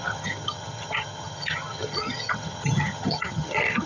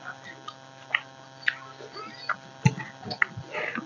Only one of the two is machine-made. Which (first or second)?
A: first